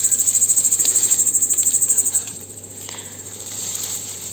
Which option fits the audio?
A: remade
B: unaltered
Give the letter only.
A